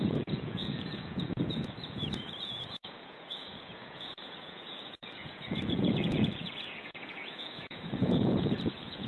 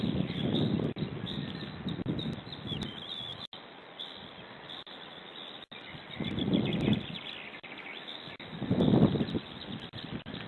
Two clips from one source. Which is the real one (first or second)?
second